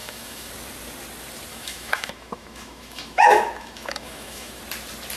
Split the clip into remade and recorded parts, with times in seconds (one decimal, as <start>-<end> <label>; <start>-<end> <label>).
0.0-0.5 remade; 0.5-1.5 recorded; 1.5-4.6 remade; 4.6-5.2 recorded